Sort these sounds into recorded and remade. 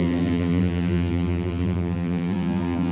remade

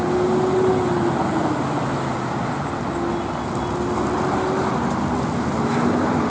recorded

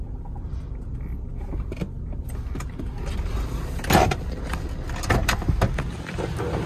recorded